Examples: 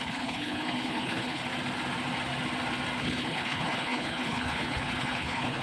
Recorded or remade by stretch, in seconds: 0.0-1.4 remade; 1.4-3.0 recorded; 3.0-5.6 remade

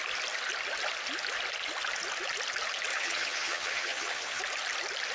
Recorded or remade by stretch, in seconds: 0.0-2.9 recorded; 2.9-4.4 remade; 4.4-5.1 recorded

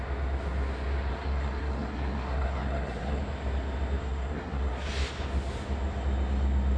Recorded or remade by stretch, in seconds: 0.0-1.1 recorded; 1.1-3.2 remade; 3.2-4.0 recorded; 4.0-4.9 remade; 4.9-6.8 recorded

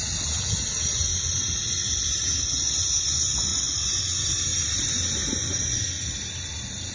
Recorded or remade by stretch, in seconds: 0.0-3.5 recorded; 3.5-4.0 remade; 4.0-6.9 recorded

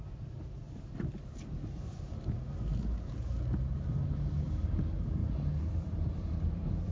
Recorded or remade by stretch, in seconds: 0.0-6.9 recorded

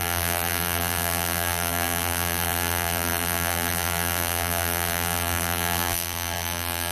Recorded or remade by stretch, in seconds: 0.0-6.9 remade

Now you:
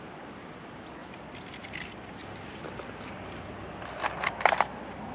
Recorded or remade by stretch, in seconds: 0.0-5.1 recorded

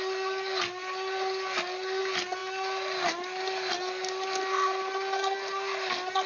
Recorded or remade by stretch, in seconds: 0.0-6.3 recorded